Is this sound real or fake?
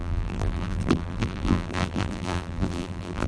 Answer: fake